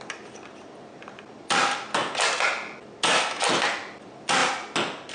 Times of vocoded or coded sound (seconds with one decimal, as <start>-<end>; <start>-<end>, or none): 0.0-2.0; 3.6-4.4